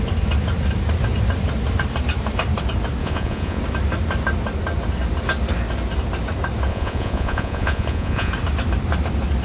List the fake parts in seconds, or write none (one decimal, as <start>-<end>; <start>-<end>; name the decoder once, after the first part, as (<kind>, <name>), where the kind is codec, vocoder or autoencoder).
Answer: 3.0-3.6 (vocoder, Vocos); 6.7-8.3